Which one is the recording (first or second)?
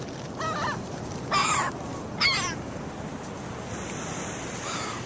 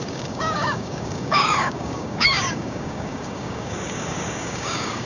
first